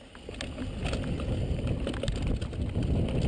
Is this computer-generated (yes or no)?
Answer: no